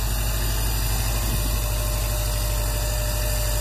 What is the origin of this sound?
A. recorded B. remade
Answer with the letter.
A